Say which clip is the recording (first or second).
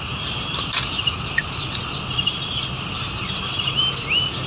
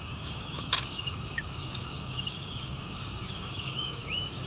first